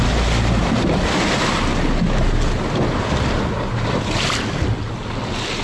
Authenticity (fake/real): real